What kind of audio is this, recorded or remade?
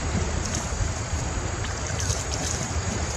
remade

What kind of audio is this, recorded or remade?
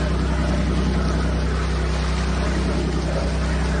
recorded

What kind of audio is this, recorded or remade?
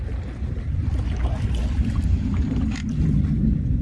recorded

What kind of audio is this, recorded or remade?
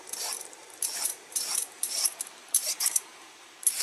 remade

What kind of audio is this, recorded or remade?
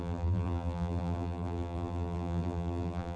remade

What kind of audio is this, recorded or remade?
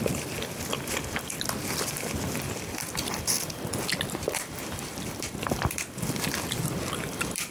remade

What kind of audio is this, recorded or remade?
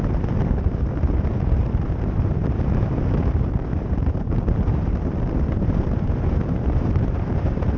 remade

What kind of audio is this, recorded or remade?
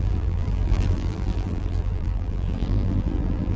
remade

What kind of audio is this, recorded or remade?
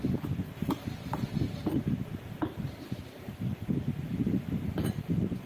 remade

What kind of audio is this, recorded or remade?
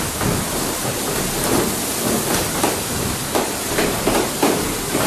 recorded